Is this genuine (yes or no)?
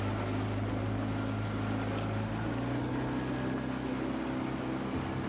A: yes